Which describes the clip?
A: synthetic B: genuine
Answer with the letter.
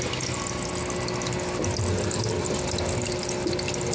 B